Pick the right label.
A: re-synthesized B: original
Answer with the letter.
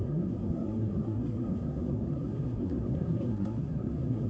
A